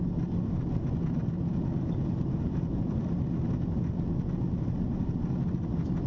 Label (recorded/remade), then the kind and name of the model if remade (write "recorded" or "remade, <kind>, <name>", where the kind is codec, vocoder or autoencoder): recorded